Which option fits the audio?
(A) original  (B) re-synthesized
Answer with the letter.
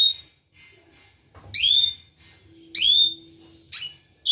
A